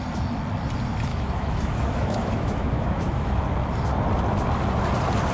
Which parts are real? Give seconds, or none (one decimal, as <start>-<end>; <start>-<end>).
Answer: 0.0-1.1; 3.4-5.3